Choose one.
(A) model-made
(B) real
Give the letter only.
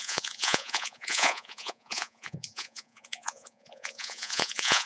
A